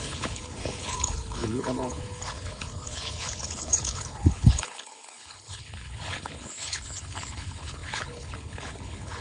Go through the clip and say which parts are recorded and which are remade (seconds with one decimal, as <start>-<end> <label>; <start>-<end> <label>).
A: 0.0-9.2 remade